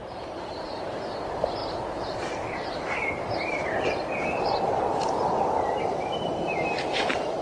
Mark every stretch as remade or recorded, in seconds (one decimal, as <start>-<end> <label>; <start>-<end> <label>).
0.0-7.4 remade